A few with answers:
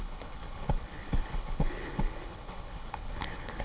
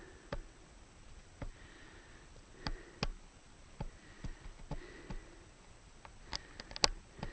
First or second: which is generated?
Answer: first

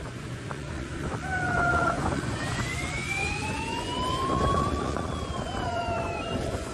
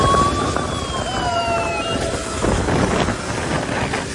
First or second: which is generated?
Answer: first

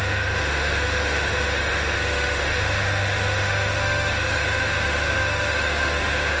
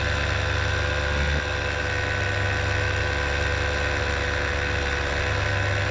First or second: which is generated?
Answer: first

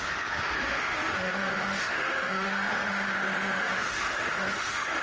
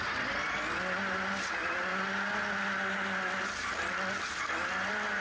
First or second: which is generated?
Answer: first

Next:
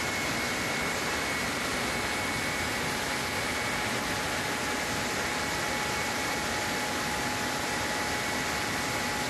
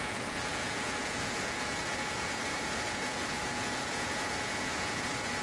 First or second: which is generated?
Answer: second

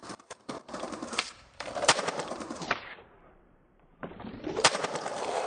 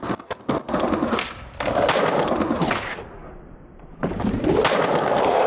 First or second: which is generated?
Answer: first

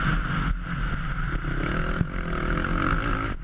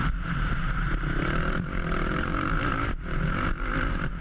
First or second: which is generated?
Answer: second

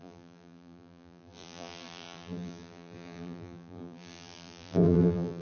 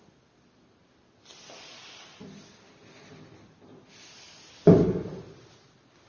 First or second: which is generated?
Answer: first